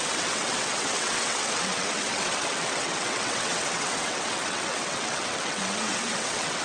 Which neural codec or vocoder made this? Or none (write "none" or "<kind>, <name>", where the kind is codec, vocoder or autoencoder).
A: vocoder, WaveNeXt